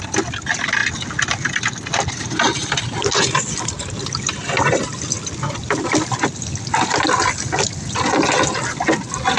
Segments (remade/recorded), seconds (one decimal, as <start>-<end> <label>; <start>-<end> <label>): 0.0-9.4 recorded